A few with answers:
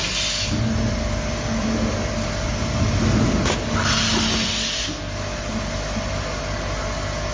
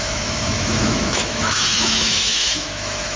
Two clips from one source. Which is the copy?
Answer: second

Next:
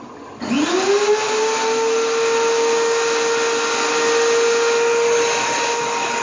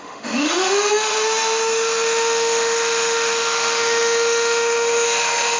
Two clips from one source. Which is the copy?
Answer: second